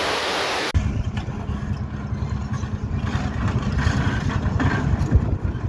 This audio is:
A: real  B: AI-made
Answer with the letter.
A